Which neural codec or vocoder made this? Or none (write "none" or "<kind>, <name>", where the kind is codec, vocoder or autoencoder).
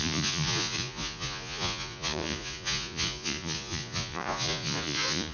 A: vocoder, Vocos